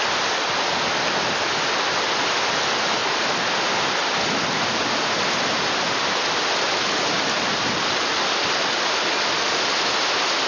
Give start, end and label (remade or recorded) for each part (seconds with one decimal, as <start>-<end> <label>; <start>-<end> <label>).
0.0-10.5 recorded

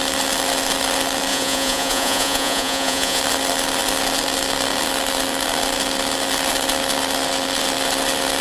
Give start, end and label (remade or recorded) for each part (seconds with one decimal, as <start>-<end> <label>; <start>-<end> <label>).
0.0-1.3 recorded; 1.3-3.2 remade; 3.2-8.4 recorded

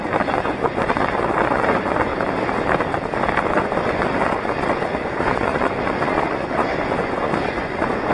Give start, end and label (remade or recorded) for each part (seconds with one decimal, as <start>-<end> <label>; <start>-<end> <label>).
0.0-2.1 remade; 2.1-3.5 recorded; 3.5-8.1 remade